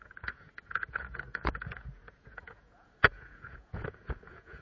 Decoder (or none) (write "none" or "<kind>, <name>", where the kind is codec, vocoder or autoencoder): vocoder, Vocos